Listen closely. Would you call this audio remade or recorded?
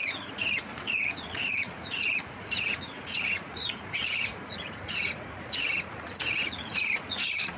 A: remade